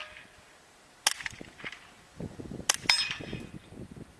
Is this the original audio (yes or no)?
yes